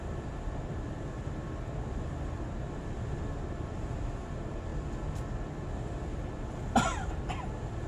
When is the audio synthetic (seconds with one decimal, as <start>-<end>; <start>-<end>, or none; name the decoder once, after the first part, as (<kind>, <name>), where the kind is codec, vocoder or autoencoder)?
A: 0.0-4.7 (vocoder, BigVGAN v2); 5.8-7.9